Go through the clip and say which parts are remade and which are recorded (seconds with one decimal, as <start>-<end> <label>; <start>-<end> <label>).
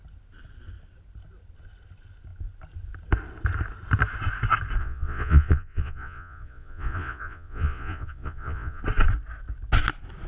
0.0-4.8 recorded; 4.8-8.8 remade; 8.8-10.3 recorded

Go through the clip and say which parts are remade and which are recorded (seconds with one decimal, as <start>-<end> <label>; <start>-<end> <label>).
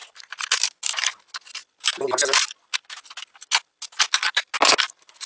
0.0-5.3 recorded